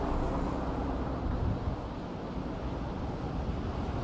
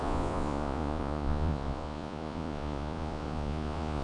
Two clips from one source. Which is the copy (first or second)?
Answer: second